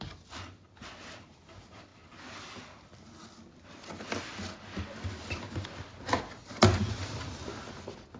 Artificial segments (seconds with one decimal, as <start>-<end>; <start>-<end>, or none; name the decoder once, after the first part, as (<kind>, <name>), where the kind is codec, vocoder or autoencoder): none